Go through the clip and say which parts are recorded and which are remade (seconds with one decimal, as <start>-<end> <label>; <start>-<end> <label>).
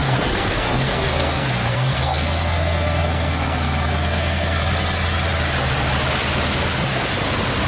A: 0.0-4.6 remade; 4.6-7.7 recorded